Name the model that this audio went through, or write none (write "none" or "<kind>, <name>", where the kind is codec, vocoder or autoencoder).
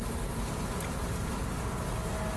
none